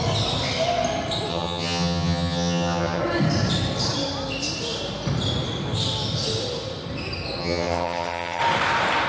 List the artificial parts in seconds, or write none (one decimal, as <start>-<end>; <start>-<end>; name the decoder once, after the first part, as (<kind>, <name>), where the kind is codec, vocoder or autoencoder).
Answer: 1.3-3.0 (vocoder, HiFi-GAN); 7.4-8.4